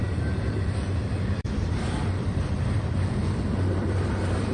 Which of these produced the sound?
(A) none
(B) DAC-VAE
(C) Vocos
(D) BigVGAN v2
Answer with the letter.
D